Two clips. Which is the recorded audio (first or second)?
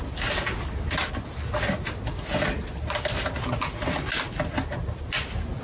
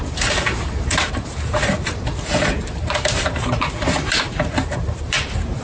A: first